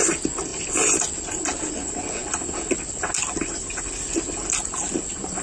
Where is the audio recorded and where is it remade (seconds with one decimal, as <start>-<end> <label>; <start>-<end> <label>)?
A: 0.0-5.4 recorded